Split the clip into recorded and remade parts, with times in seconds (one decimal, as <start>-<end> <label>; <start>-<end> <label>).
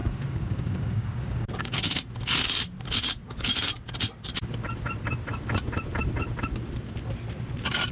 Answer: 0.0-1.8 remade; 1.8-7.9 recorded